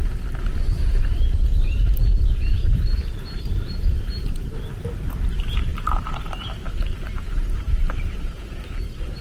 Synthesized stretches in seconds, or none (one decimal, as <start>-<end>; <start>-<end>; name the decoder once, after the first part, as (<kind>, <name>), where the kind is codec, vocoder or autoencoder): 1.0-5.1 (vocoder, BigVGAN v2); 5.7-9.2